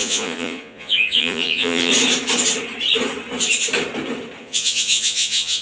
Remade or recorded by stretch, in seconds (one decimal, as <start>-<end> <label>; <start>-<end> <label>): 0.0-1.9 remade; 1.9-4.4 recorded; 4.4-5.6 remade